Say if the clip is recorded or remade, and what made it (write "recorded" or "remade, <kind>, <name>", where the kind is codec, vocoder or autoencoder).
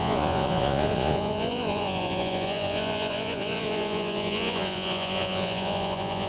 remade, vocoder, Vocos